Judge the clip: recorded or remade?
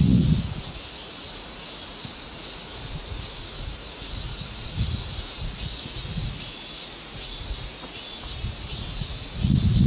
remade